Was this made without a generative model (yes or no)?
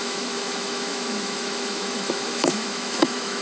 no